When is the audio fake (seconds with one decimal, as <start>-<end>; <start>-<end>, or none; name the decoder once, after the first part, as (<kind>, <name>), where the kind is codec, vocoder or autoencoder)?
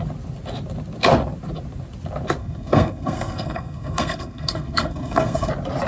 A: 2.4-5.5 (codec, SNAC)